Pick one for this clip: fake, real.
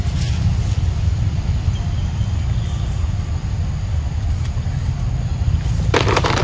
real